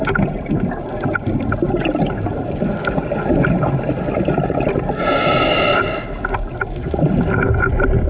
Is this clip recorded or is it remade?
recorded